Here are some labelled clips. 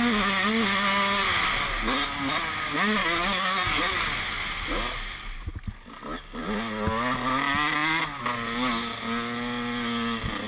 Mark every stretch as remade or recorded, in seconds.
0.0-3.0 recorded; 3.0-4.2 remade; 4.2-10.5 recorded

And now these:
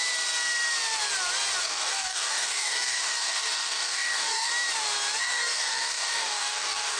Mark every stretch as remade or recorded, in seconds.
0.0-1.6 recorded; 1.6-4.5 remade; 4.5-5.2 recorded; 5.2-7.0 remade

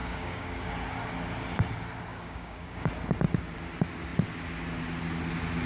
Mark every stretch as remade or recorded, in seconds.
0.0-0.7 remade; 0.7-2.1 recorded; 2.1-2.9 remade; 2.9-5.7 recorded

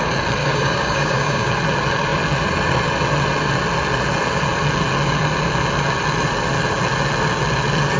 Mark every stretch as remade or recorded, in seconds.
0.0-0.4 recorded; 0.4-1.5 remade; 1.5-8.0 recorded

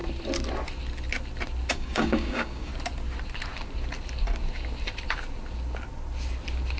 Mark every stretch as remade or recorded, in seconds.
0.0-1.7 recorded; 1.7-2.7 remade; 2.7-6.8 recorded

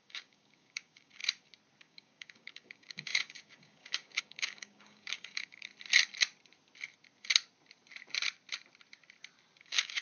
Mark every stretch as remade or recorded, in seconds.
0.0-1.2 remade; 1.2-1.8 recorded; 1.8-5.7 remade; 5.7-9.6 recorded; 9.6-10.0 remade

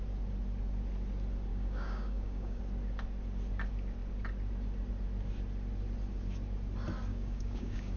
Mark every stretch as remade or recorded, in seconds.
0.0-1.5 recorded; 1.5-2.6 remade; 2.6-7.1 recorded; 7.1-8.0 remade

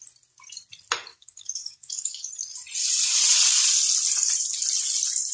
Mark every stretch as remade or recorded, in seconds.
0.0-1.1 recorded; 1.1-2.3 remade; 2.3-5.3 recorded